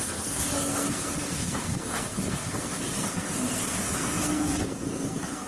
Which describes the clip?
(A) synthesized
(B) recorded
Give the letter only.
A